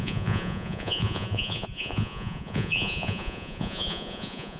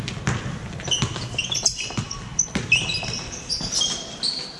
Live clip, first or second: second